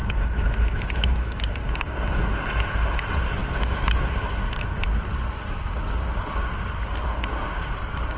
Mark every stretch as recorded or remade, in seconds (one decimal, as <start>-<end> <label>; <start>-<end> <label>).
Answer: 0.0-1.4 remade; 1.4-8.2 recorded